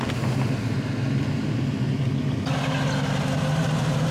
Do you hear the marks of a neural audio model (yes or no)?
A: no